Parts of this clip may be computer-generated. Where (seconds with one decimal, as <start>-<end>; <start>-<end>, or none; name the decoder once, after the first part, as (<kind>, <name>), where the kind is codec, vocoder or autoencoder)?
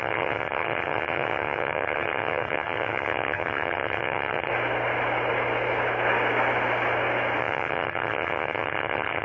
0.0-4.5 (vocoder, HiFi-GAN); 7.4-9.2